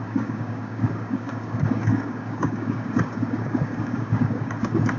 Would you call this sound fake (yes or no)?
yes